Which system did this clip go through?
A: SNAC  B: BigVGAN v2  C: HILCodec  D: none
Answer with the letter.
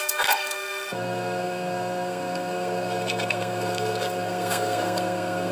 A